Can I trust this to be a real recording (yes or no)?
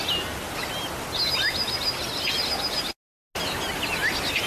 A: yes